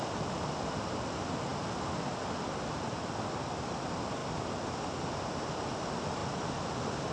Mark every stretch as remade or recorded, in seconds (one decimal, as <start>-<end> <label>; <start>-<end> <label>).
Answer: 0.0-7.1 recorded